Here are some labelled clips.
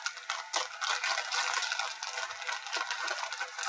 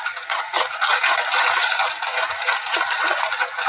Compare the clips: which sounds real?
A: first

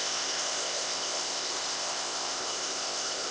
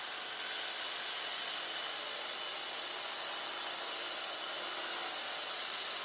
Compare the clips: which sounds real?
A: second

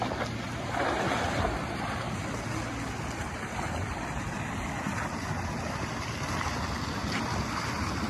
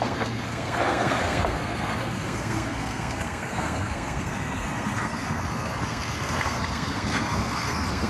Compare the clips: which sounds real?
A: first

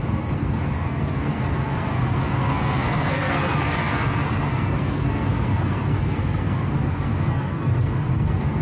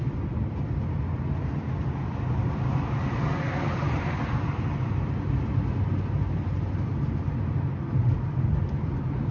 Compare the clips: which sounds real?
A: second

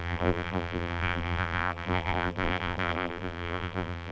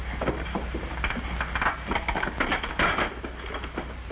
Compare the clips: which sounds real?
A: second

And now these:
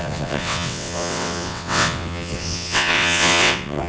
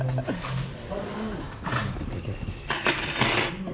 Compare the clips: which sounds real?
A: second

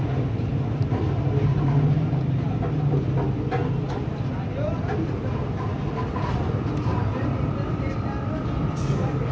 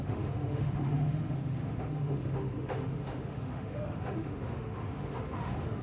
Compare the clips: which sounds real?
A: first